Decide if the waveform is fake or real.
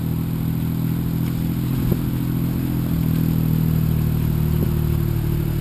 real